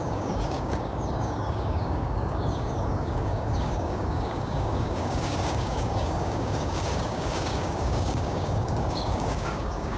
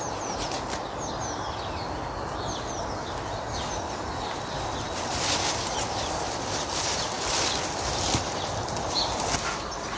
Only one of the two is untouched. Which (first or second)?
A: second